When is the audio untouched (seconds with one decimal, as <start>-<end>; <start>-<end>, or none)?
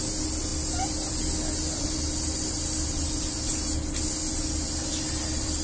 0.0-5.6